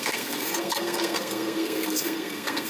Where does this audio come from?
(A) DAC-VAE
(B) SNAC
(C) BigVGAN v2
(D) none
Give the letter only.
B